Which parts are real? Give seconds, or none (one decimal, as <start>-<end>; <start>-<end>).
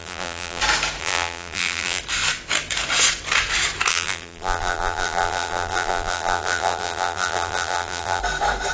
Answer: 0.6-1.0; 2.0-3.9; 8.2-8.7